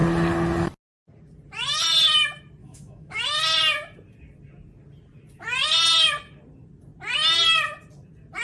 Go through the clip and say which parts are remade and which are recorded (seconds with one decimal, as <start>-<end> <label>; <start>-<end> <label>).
0.0-2.6 recorded; 2.6-3.2 remade; 3.2-8.4 recorded